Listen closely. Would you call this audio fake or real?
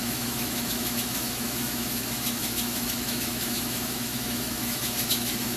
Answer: fake